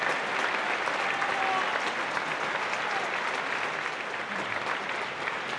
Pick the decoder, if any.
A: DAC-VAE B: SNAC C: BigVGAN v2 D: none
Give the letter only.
D